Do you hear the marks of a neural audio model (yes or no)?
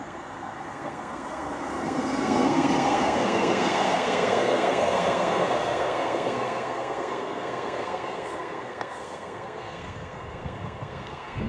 yes